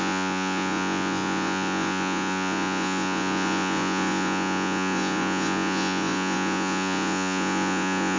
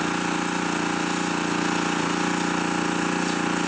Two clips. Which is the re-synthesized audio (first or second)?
first